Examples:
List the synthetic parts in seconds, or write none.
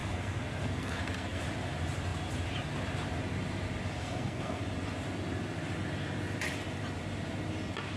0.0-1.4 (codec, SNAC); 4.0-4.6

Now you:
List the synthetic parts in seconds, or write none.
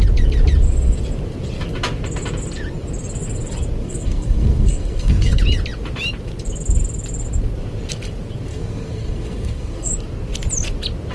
3.8-5.4 (codec, SNAC); 8.5-9.9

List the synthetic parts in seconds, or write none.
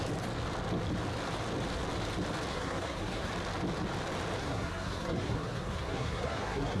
2.5-3.3 (codec, SNAC); 4.4-6.8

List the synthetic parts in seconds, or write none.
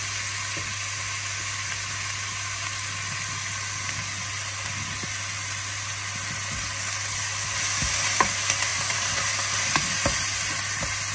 8.7-9.8 (vocoder, BigVGAN v2)